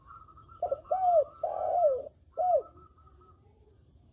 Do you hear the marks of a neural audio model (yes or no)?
yes